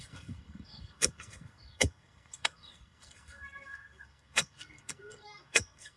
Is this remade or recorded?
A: remade